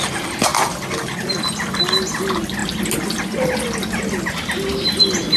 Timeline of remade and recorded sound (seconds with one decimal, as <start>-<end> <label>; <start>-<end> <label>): 0.0-5.4 recorded